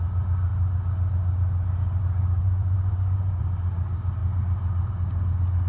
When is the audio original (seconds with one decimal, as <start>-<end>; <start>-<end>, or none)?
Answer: 0.0-2.4; 3.4-5.7

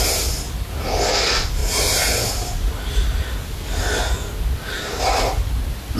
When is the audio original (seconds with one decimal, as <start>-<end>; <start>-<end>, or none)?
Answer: 0.0-6.0

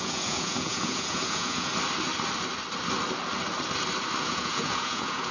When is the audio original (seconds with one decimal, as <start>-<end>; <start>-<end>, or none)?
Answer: 1.7-4.2

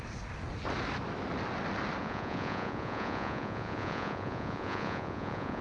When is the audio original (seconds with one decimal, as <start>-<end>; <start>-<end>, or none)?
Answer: 0.0-2.0

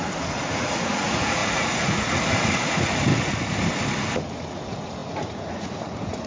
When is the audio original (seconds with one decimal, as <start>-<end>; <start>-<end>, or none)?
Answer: 3.1-4.3

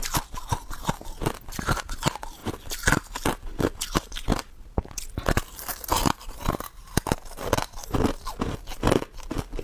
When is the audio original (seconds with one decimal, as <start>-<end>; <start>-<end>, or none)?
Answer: 0.0-9.6

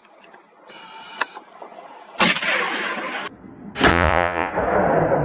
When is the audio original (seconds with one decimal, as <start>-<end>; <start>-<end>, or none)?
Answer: 0.0-3.9; 4.5-5.2

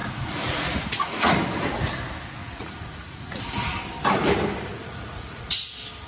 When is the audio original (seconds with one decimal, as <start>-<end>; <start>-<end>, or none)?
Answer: 1.3-2.4; 3.4-4.7; 5.6-6.1